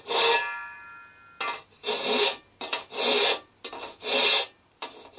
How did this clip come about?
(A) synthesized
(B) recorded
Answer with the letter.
B